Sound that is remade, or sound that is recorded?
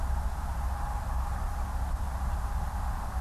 recorded